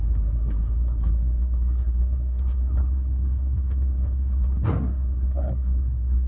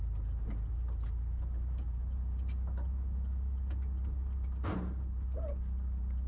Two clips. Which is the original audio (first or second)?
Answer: second